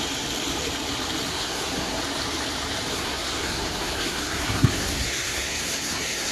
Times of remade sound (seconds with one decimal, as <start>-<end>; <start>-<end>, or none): 1.3-2.0; 2.9-6.3